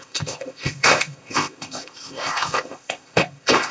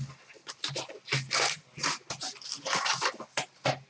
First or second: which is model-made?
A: first